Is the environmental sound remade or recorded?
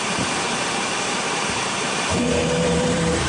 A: remade